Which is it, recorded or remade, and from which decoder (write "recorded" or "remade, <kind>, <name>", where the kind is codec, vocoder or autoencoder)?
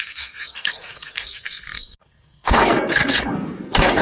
remade, codec, SNAC